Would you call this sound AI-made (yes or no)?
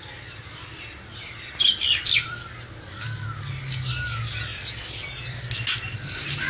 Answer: no